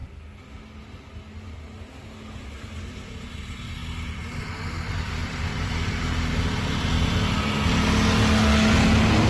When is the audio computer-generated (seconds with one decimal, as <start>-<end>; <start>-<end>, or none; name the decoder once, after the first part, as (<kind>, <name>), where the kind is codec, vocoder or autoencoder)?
5.2-6.4 (vocoder, BigVGAN v2)